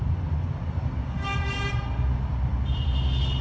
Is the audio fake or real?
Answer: real